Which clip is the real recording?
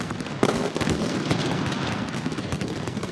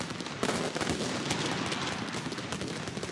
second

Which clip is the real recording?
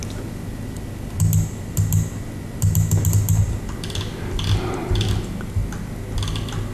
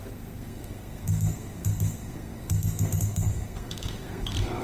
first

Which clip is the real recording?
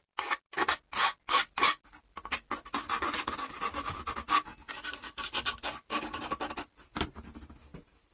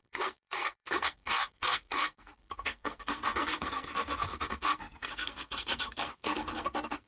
first